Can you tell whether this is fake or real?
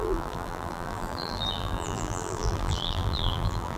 fake